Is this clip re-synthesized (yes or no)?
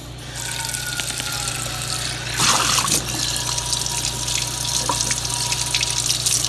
no